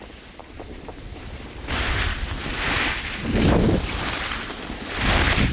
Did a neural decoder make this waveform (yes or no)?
no